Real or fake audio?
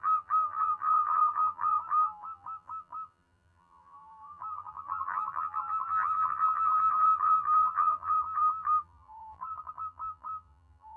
fake